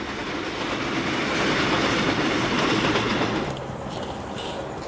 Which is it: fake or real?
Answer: real